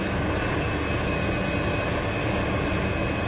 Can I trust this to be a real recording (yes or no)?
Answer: yes